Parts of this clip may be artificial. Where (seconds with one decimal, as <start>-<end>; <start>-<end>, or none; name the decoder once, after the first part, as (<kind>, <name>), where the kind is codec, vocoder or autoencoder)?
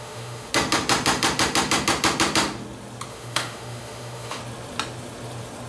0.0-0.5 (autoencoder, DAC-VAE); 3.1-4.4